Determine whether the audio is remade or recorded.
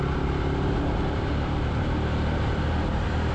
recorded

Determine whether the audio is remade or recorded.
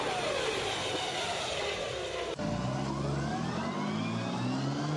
recorded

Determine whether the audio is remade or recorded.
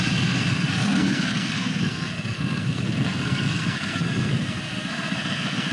remade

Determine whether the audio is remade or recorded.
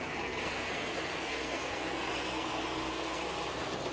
remade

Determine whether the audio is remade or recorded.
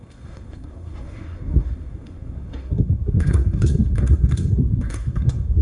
remade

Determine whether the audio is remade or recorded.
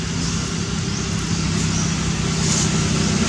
recorded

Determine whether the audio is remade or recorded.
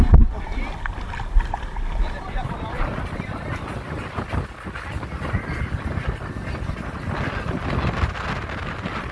recorded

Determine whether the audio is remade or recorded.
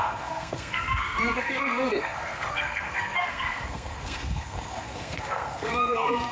remade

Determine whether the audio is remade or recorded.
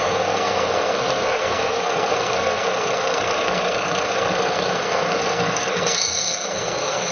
remade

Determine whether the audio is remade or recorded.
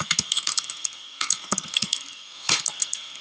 remade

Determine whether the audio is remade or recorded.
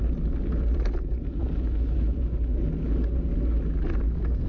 recorded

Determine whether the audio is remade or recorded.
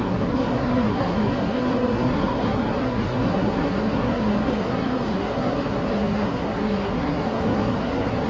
remade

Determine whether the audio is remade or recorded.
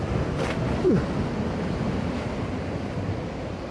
recorded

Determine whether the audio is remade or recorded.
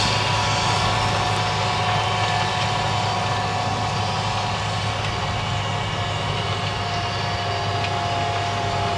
recorded